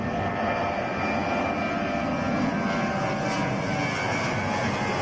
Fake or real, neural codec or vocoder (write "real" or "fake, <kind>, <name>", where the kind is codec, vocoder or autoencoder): real